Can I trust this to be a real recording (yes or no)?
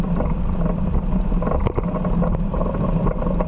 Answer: yes